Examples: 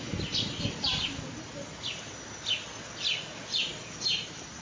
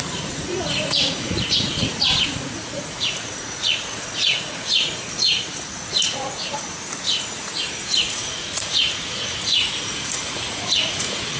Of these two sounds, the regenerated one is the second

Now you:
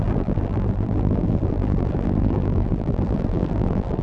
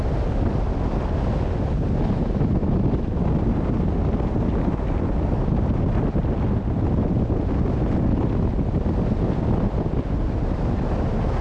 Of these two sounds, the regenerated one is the first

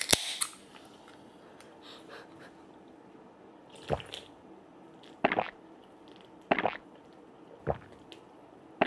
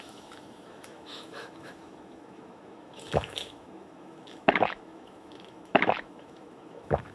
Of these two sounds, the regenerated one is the second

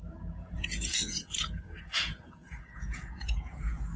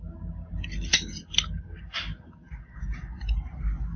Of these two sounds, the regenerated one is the first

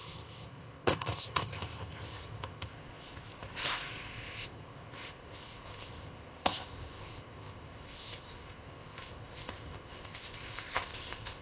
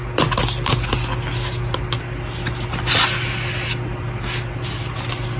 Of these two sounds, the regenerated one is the first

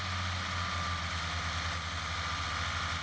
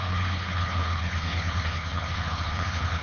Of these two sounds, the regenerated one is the second